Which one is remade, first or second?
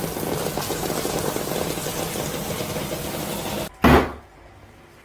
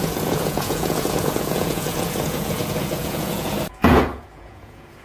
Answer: second